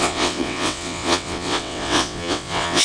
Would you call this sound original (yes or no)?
no